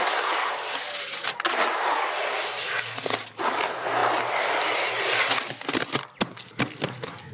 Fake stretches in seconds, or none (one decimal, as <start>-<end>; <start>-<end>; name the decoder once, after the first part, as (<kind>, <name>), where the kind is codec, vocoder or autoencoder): none

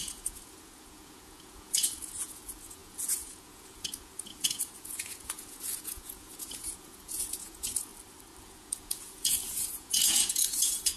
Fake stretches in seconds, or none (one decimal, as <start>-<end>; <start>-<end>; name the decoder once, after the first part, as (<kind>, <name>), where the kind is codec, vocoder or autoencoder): 0.0-7.9 (vocoder, Vocos); 8.4-11.0

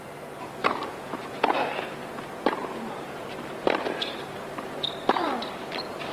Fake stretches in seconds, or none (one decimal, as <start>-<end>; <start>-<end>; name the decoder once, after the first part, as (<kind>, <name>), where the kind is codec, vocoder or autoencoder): 0.9-1.7 (vocoder, Vocos); 2.6-3.2

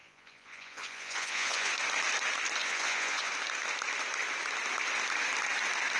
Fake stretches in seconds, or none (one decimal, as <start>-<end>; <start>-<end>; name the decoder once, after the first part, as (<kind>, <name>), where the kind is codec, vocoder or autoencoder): 0.0-1.7 (vocoder, Vocos); 2.6-3.3

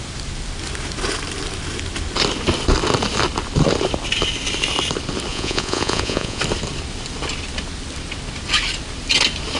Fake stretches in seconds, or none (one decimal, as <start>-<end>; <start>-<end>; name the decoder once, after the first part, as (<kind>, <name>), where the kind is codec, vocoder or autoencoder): 5.3-6.4 (vocoder, Vocos)

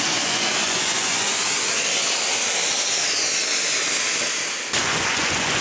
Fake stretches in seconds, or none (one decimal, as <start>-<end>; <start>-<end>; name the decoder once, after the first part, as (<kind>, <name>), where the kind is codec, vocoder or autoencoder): 0.0-1.4 (vocoder, Vocos); 4.8-5.6